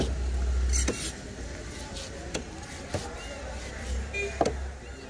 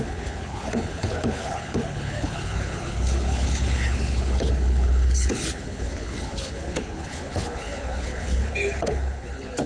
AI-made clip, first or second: second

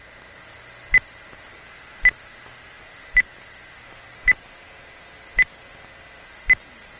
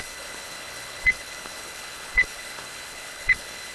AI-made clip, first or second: second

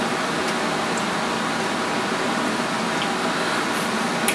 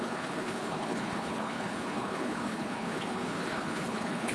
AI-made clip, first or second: second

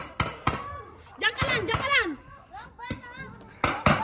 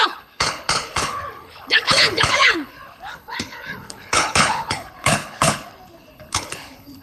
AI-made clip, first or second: second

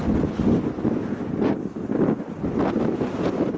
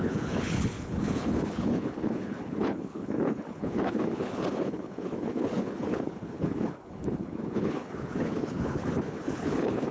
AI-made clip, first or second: second